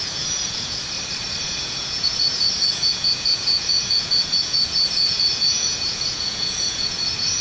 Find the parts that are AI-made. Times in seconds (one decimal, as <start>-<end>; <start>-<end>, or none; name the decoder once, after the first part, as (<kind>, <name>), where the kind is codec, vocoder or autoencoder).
0.0-0.8 (vocoder, Vocos); 1.4-7.4

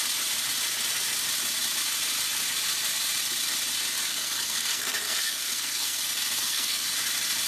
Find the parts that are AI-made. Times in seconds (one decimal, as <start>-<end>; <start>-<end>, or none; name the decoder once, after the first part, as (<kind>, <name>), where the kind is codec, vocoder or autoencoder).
4.1-6.9 (codec, SNAC)

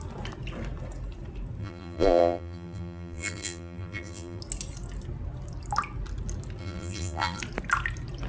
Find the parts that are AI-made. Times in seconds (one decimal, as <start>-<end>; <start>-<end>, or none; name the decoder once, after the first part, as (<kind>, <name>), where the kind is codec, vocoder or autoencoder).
1.6-4.4 (vocoder, BigVGAN v2); 6.6-7.4

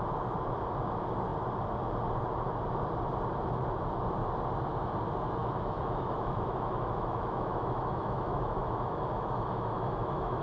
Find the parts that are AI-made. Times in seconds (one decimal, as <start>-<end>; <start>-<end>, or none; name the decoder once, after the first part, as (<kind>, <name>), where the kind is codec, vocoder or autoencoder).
5.4-10.4 (autoencoder, DAC-VAE)

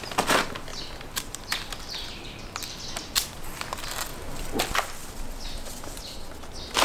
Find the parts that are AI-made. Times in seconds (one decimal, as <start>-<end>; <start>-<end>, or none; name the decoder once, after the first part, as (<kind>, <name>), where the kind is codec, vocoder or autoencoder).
0.7-2.8 (vocoder, BigVGAN v2); 4.1-4.6; 5.0-6.0

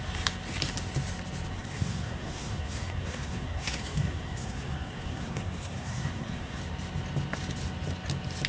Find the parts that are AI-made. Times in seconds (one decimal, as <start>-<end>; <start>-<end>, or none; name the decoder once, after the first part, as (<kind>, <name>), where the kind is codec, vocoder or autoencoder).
1.5-6.6 (codec, SNAC)